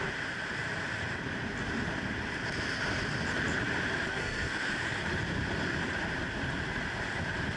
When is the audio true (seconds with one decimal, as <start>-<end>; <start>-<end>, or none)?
0.0-4.1; 4.6-7.6